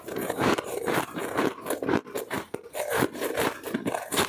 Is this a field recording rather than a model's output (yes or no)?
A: no